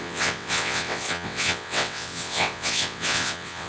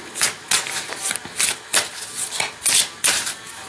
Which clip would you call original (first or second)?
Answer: second